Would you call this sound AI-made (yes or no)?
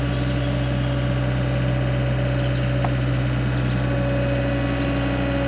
no